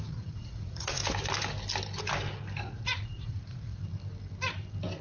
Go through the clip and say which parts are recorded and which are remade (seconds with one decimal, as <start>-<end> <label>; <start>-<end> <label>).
0.0-1.0 remade; 1.0-2.6 recorded; 2.6-3.8 remade; 3.8-5.0 recorded

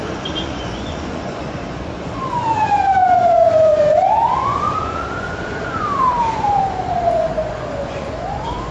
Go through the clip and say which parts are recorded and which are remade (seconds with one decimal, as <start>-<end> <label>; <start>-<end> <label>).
0.0-8.7 remade

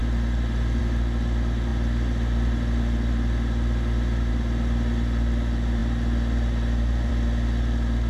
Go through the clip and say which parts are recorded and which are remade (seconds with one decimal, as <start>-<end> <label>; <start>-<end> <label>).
0.0-8.1 recorded

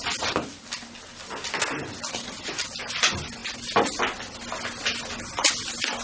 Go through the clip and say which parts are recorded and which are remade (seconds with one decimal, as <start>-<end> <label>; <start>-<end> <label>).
0.0-6.0 recorded

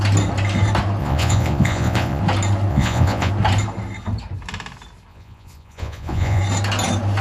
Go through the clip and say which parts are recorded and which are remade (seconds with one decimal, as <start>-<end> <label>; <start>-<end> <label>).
0.0-1.0 recorded; 1.0-2.2 remade; 2.2-2.7 recorded; 2.7-3.3 remade; 3.3-5.1 recorded; 5.1-6.4 remade; 6.4-7.2 recorded

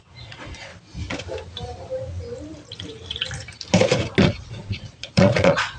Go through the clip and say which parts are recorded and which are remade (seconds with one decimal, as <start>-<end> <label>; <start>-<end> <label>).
0.0-0.7 remade; 0.7-4.2 recorded; 4.2-5.8 remade

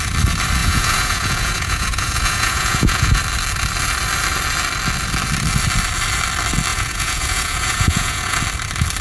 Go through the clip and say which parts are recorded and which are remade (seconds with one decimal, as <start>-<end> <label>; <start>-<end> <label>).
0.0-0.6 recorded; 0.6-3.2 remade; 3.2-6.7 recorded; 6.7-8.4 remade; 8.4-9.0 recorded

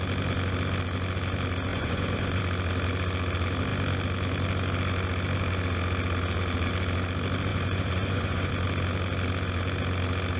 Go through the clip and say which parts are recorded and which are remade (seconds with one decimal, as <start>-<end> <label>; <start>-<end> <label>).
0.0-1.7 recorded; 1.7-2.4 remade; 2.4-7.5 recorded; 7.5-8.5 remade; 8.5-10.4 recorded